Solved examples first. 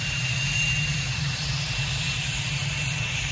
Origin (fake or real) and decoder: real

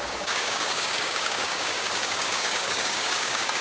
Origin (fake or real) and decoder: fake, codec, DAC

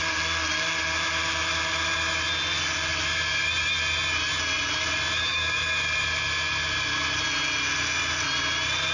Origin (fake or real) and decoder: real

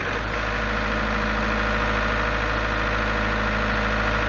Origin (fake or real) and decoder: real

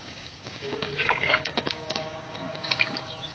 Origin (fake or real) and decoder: fake, codec, DAC